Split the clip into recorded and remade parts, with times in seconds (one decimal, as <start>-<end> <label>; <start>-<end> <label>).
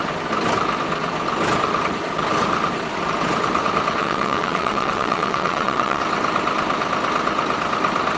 0.0-4.0 recorded; 4.0-6.0 remade; 6.0-8.2 recorded